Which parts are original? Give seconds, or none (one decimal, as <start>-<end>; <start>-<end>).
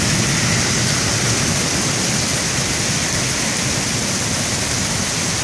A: 0.0-5.4